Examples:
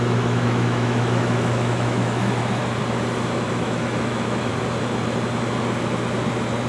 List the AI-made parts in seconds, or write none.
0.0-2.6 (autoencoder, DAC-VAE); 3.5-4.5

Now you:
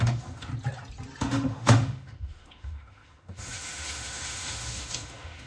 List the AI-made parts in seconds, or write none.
0.0-0.5 (autoencoder, DAC-VAE); 1.2-5.5

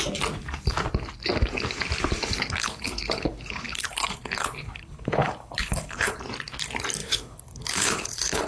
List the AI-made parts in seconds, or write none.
2.6-6.2 (codec, HILCodec); 7.0-8.5